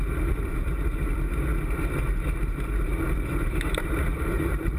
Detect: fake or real fake